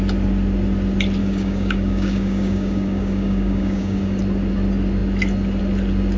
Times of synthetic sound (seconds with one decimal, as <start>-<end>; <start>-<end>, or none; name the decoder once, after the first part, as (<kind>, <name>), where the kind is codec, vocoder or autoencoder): 1.2-4.2 (codec, DAC)